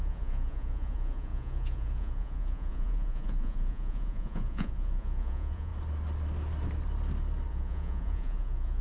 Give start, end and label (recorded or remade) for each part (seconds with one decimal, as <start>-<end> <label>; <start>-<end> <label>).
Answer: 0.0-5.7 remade; 5.7-7.5 recorded; 7.5-8.8 remade